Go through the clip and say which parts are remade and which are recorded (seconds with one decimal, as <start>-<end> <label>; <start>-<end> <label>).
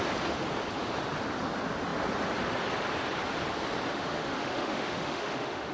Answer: 0.0-3.9 recorded; 3.9-5.7 remade